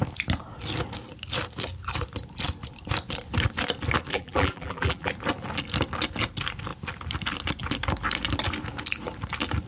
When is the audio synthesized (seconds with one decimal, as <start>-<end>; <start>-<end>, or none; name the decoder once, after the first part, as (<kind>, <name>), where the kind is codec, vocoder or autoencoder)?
4.1-5.1 (vocoder, BigVGAN v2)